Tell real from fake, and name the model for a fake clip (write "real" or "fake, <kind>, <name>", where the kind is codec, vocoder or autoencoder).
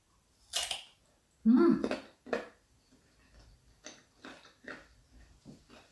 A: real